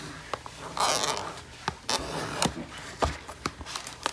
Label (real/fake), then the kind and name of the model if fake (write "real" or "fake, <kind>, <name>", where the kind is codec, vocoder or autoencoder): real